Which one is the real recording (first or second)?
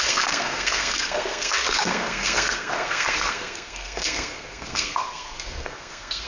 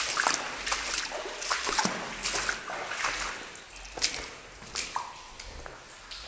second